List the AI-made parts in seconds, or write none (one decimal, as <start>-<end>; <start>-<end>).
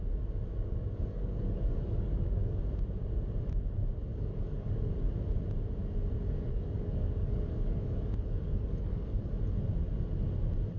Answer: 0.5-2.6; 4.1-4.9; 6.5-9.3